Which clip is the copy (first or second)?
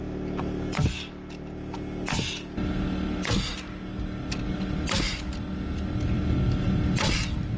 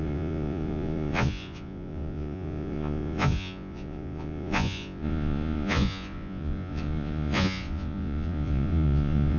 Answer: second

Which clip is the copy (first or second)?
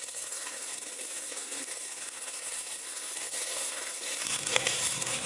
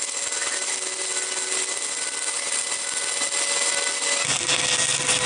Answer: first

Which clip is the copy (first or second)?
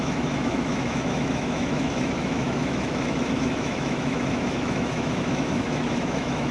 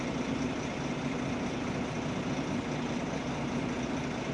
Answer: first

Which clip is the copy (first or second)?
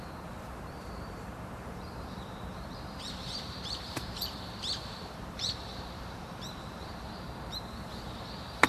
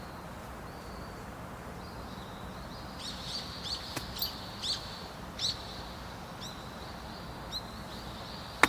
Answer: first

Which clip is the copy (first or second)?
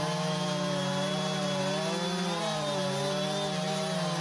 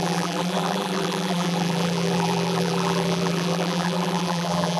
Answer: second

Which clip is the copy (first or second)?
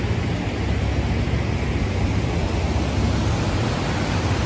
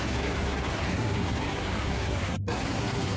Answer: second